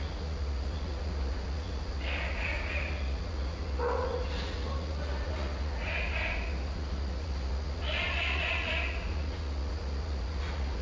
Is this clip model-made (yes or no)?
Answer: yes